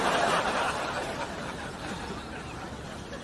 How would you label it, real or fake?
fake